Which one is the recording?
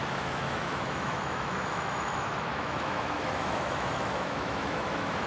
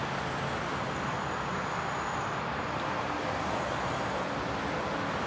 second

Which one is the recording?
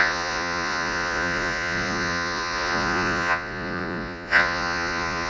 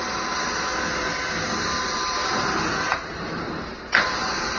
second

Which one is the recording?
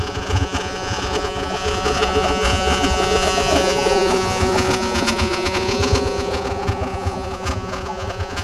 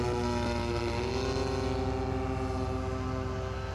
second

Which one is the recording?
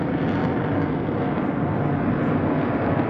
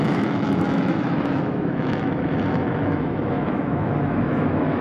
first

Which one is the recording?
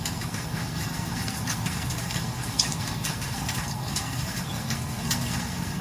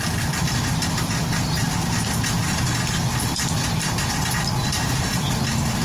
second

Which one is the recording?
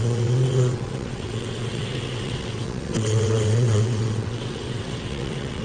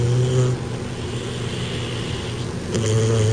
second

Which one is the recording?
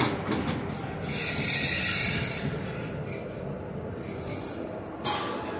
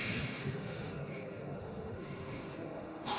first